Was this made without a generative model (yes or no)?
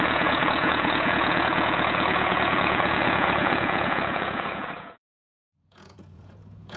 no